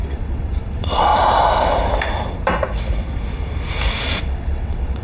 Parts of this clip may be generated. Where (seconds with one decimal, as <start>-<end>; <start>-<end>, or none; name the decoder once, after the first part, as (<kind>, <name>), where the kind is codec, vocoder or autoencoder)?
0.0-1.1 (vocoder, WaveNeXt); 4.1-5.0

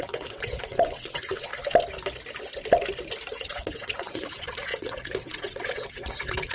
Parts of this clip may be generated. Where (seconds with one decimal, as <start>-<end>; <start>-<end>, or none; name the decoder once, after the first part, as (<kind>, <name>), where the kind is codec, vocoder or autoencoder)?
0.0-1.5 (vocoder, WaveNeXt); 3.3-6.5